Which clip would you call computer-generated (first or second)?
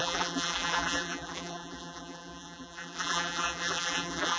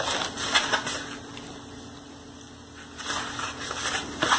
first